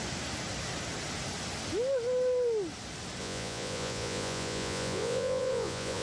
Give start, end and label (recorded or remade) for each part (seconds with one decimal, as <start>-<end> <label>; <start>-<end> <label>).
0.0-3.2 recorded; 3.2-6.0 remade